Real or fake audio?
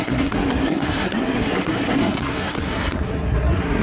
fake